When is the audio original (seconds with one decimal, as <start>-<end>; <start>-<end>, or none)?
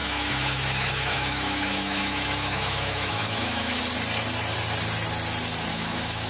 3.8-5.7